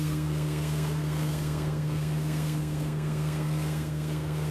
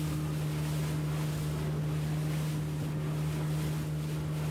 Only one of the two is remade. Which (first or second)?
first